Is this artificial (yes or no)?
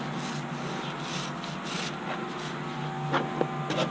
no